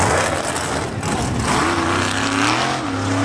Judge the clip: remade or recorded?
recorded